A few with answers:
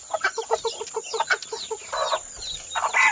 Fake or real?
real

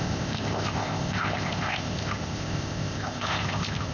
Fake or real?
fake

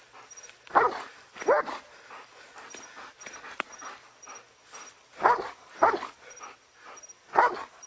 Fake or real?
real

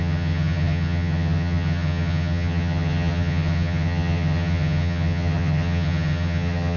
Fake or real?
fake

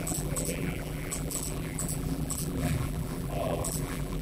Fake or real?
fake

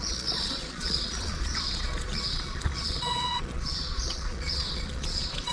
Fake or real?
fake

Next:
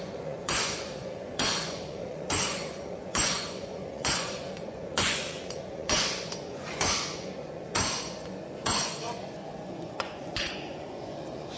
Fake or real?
fake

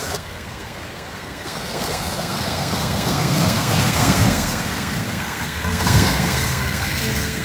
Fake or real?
fake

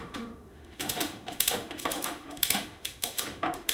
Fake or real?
fake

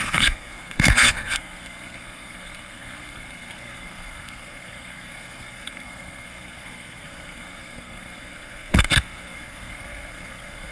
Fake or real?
fake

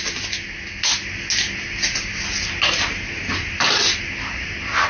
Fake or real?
real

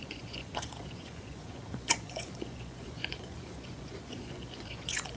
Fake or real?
fake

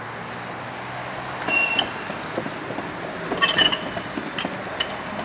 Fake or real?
real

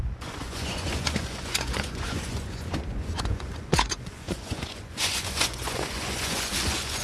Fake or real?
fake